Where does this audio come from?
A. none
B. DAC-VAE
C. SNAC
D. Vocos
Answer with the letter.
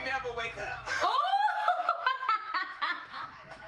B